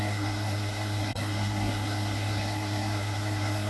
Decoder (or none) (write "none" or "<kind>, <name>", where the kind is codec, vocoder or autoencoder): codec, SNAC